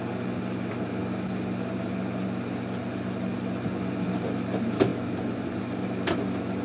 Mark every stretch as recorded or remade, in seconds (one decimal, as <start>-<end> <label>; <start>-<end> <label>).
0.0-6.6 recorded